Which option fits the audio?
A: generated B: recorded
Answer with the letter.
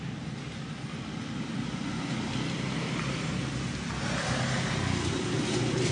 B